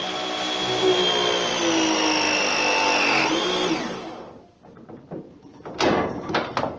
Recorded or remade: recorded